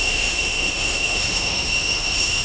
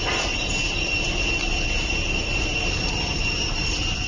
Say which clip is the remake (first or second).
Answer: first